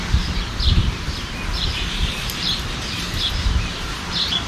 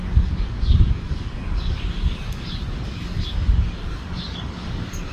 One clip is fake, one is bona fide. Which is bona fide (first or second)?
first